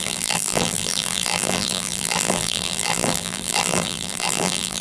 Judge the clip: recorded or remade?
remade